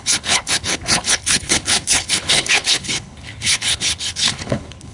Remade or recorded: remade